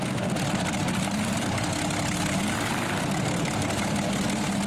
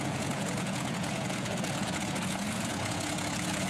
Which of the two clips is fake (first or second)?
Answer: second